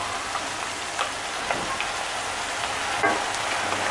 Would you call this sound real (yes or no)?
yes